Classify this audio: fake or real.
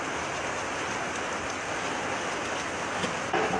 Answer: real